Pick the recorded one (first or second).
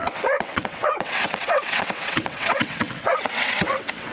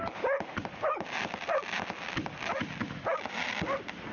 second